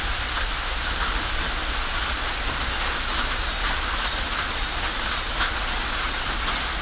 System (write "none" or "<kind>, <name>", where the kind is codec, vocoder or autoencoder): none